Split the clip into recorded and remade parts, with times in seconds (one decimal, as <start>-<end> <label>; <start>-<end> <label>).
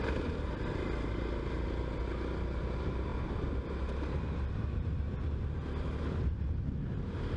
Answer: 0.0-7.4 recorded